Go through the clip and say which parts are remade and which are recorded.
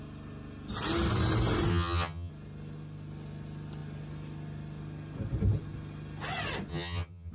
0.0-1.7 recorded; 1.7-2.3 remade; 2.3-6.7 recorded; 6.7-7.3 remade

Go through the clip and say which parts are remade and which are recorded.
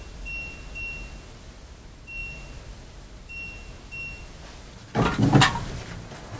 0.0-6.4 recorded